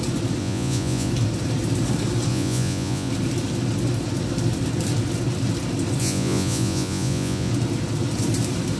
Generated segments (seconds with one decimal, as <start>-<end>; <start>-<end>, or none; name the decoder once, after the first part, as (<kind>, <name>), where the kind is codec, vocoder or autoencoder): 0.4-1.1 (vocoder, Vocos); 2.3-3.1; 6.0-7.5